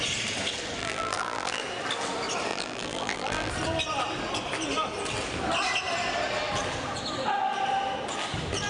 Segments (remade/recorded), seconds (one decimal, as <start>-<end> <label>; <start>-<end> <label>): 0.0-0.8 recorded; 0.8-1.6 remade; 1.6-2.5 recorded; 2.5-3.5 remade; 3.5-8.7 recorded